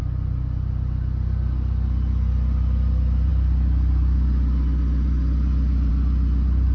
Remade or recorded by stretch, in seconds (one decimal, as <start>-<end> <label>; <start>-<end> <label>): 0.0-6.7 recorded